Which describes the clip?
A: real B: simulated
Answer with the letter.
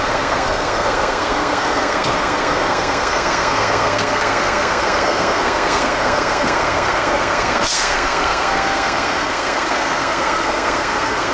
B